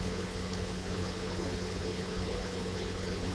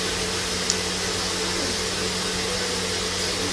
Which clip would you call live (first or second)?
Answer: second